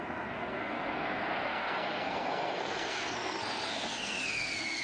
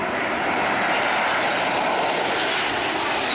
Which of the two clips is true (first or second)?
second